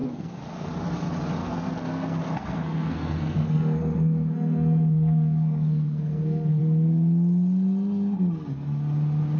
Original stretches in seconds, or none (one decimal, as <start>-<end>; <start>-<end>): 0.7-1.4; 6.6-9.4